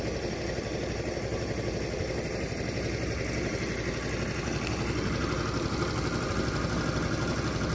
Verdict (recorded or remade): recorded